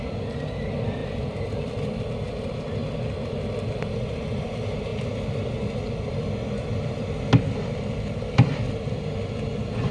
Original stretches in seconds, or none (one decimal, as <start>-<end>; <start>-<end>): 0.0-1.0; 2.1-9.9